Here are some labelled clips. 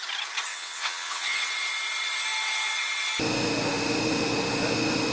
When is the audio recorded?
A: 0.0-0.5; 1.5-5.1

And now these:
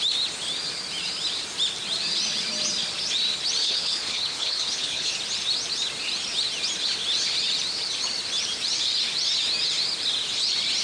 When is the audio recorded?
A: 0.0-3.6; 5.1-10.8

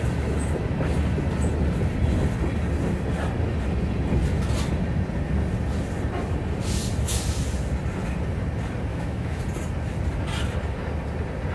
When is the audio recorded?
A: 0.0-8.9; 9.4-11.5

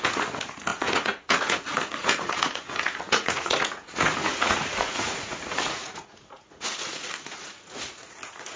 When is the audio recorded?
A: none

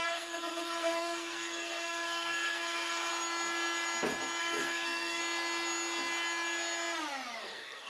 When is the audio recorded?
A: 3.1-4.4; 5.2-7.4

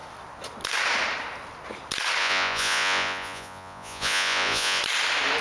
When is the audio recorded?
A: 0.0-2.2; 4.8-5.4

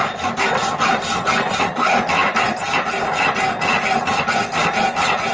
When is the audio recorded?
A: 0.0-5.3